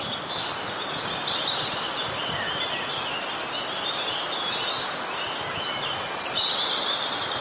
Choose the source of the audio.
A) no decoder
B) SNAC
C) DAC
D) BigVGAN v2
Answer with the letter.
A